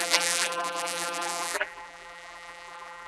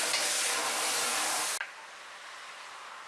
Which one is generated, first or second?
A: first